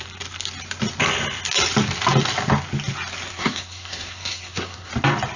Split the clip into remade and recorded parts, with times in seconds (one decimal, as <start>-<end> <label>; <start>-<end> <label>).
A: 0.0-3.3 recorded; 3.3-4.9 remade; 4.9-5.4 recorded